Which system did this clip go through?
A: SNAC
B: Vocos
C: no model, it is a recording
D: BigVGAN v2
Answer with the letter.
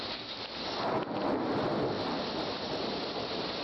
C